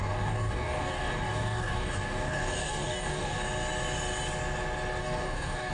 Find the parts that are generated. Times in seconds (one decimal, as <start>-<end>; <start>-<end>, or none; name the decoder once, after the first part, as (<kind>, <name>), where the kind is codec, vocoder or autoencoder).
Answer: 0.0-3.4 (codec, DAC); 5.0-5.7